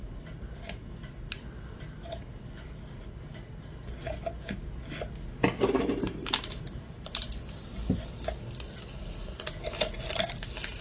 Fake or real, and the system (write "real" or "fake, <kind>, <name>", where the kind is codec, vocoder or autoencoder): real